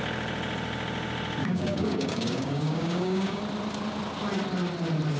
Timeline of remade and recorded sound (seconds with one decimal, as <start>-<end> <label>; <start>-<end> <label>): 0.0-1.4 recorded; 1.4-3.4 remade; 3.4-5.2 recorded

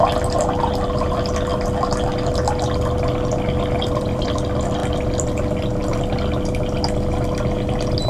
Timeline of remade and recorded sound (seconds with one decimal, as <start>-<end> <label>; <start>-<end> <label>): 0.0-5.8 remade; 5.8-8.1 recorded

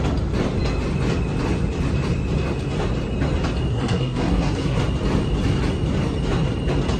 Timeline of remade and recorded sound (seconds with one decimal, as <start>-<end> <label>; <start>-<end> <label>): 0.0-3.7 recorded; 3.7-4.8 remade; 4.8-7.0 recorded

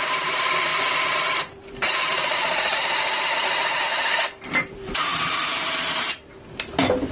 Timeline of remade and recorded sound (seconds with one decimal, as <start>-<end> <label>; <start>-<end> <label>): 0.0-6.2 remade; 6.2-7.1 recorded